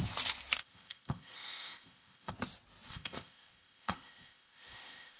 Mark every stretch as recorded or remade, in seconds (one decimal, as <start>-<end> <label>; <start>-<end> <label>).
0.0-0.6 recorded; 0.6-2.3 remade; 2.3-2.9 recorded; 2.9-5.2 remade